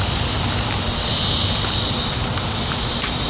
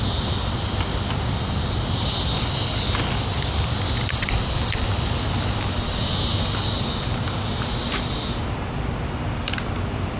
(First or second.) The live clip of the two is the second